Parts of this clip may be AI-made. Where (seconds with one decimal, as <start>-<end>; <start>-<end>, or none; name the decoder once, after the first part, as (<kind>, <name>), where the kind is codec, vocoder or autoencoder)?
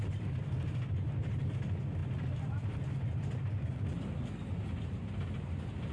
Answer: none